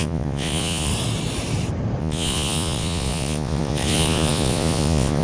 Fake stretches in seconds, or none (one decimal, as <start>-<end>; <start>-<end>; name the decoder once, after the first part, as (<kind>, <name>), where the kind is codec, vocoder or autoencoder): 0.0-0.9 (vocoder, Vocos); 2.0-5.2